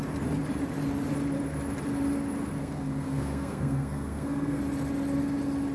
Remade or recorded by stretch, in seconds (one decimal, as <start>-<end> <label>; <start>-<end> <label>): 0.0-2.6 recorded; 2.6-4.6 remade; 4.6-5.7 recorded